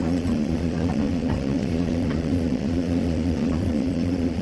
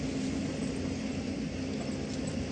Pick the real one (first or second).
second